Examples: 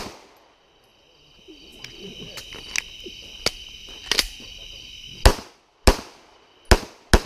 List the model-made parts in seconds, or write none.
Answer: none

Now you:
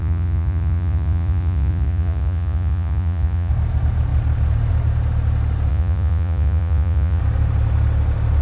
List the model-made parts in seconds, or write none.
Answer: 0.0-3.5 (vocoder, Vocos); 5.7-7.2

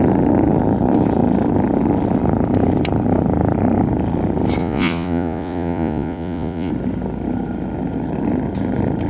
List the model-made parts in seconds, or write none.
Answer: 4.6-6.7 (vocoder, Vocos)